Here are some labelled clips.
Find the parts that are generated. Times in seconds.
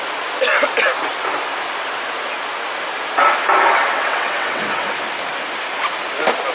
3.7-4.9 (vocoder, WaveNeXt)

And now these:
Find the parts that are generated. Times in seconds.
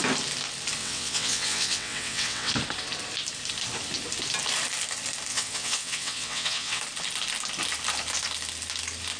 0.8-2.5 (vocoder, WaveNeXt); 5.3-6.8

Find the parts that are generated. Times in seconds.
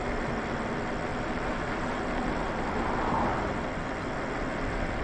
none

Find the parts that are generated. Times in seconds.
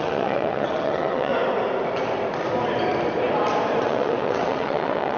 0.0-1.3 (vocoder, WaveNeXt); 3.8-5.2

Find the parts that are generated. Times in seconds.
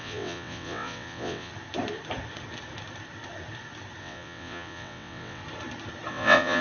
0.0-1.5 (vocoder, WaveNeXt); 4.0-5.4; 6.1-6.6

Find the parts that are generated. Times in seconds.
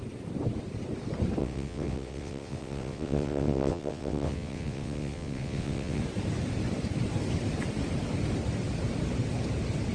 1.4-6.0 (vocoder, WaveNeXt)